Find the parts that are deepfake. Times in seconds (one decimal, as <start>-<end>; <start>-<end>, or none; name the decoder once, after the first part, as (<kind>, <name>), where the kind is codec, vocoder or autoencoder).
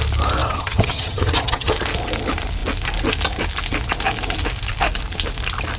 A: 0.4-1.7 (vocoder, HiFi-GAN)